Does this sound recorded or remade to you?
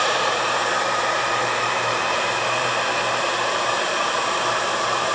remade